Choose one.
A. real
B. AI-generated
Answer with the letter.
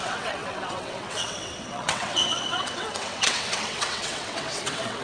B